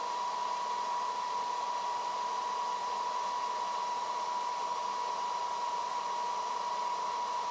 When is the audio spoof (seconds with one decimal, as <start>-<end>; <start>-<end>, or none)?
0.0-7.5